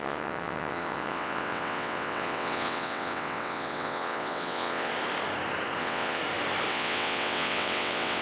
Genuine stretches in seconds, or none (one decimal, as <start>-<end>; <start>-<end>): 4.9-5.8; 6.2-6.7